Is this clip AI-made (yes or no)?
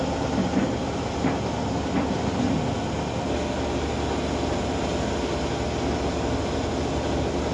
no